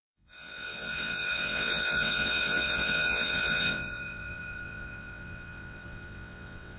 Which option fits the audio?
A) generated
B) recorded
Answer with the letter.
A